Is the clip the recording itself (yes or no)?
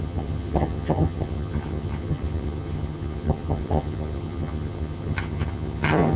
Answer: no